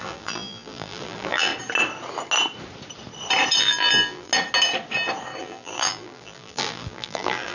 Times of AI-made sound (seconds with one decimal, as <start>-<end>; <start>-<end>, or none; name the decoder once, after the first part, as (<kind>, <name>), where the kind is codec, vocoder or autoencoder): 0.0-1.5 (vocoder, BigVGAN v2); 3.6-4.3; 5.4-7.5